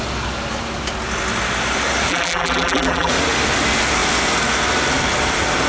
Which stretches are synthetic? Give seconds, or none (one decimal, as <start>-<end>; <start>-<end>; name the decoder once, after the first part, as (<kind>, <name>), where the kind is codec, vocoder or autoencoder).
2.1-3.1 (vocoder, BigVGAN v2)